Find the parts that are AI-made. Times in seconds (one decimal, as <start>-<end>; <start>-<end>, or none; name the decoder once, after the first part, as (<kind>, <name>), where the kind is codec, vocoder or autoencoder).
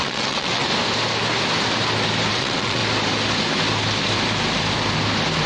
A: 0.0-0.7 (vocoder, WaveNeXt); 2.3-2.8